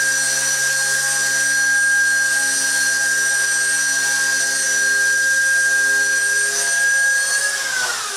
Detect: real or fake real